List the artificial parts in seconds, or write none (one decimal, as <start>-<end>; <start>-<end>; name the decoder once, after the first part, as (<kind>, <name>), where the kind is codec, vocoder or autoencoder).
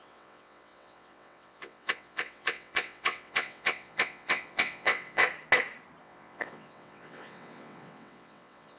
0.0-5.2 (vocoder, WaveNeXt); 6.0-8.8